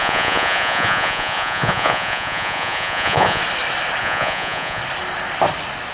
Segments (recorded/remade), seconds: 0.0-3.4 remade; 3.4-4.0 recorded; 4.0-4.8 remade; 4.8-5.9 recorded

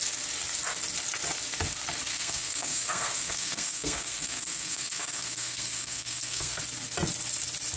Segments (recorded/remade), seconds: 0.0-2.1 recorded; 2.1-6.6 remade; 6.6-7.8 recorded